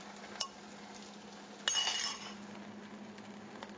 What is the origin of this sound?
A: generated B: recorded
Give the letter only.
B